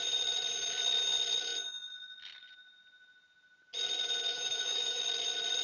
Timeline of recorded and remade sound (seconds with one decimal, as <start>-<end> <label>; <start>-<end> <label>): 0.0-4.3 recorded; 4.3-5.0 remade; 5.0-5.6 recorded